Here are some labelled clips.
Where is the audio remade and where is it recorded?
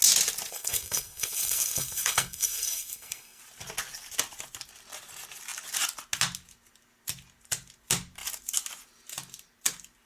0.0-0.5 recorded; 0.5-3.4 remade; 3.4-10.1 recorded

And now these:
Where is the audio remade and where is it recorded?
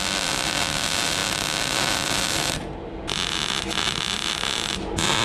0.0-5.2 recorded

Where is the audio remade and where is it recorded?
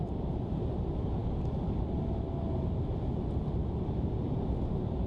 0.0-5.1 recorded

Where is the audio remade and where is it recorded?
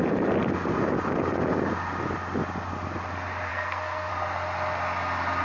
0.0-3.5 recorded; 3.5-4.1 remade; 4.1-5.4 recorded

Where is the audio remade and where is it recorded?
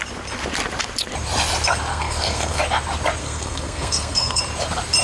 0.0-1.9 recorded; 1.9-2.6 remade; 2.6-3.2 recorded; 3.2-4.4 remade; 4.4-5.0 recorded